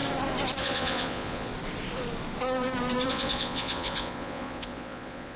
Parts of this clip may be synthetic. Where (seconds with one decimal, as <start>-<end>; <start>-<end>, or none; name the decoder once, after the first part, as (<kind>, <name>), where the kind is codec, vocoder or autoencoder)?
0.6-1.5 (vocoder, Vocos); 3.1-5.4